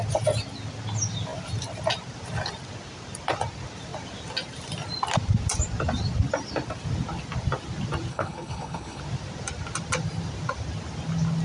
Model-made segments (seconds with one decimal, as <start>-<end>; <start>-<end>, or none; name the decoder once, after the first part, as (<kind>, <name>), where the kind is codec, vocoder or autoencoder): 8.1-9.0 (codec, HILCodec)